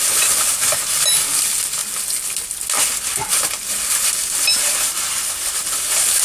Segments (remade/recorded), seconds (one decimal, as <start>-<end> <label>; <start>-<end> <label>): 0.0-6.2 recorded